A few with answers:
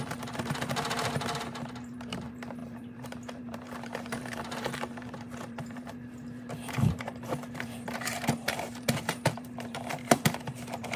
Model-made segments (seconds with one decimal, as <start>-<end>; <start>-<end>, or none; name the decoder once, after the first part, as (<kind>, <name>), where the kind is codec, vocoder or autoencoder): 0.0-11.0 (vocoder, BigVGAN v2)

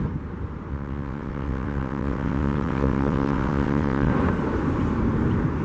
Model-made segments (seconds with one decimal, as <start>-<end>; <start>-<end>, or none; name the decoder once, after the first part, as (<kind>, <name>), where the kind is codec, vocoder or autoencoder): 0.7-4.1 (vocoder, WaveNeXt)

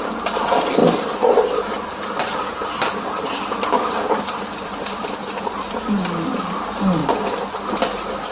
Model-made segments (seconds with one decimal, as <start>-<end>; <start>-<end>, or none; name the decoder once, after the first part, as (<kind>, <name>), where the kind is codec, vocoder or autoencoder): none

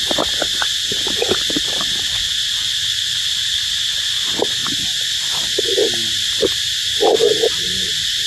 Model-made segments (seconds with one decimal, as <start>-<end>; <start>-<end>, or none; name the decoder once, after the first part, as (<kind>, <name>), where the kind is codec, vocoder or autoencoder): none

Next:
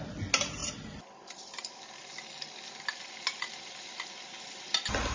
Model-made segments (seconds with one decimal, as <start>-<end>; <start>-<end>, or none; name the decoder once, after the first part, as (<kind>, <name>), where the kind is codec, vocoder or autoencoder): none

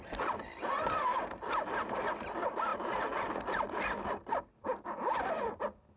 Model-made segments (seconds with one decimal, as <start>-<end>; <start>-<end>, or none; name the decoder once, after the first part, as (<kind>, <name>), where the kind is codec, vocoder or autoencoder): 1.1-2.1 (vocoder, BigVGAN v2)